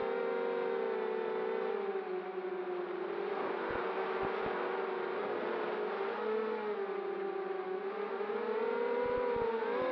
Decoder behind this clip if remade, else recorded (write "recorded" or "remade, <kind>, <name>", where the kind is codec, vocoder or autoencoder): recorded